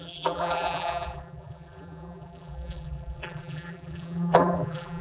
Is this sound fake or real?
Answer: fake